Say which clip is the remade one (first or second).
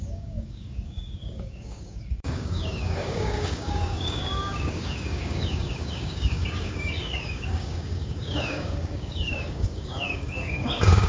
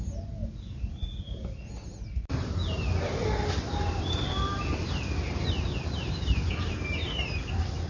first